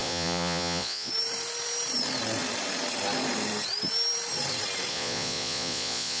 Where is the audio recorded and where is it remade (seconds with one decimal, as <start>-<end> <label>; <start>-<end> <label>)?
0.0-1.1 remade; 1.1-4.9 recorded; 4.9-6.2 remade